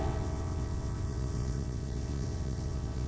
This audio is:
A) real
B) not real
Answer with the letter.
B